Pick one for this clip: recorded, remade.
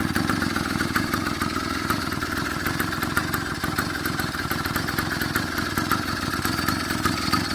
remade